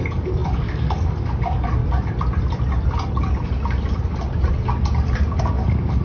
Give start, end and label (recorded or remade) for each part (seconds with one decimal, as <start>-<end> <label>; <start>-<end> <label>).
0.0-1.8 remade; 1.8-5.4 recorded; 5.4-6.0 remade